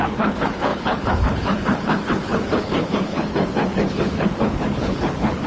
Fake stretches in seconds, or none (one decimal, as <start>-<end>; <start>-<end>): 0.0-5.5